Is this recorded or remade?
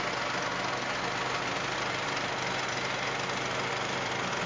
recorded